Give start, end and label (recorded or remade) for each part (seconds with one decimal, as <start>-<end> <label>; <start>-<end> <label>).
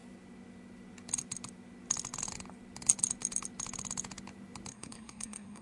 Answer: 0.0-4.7 recorded; 4.7-5.6 remade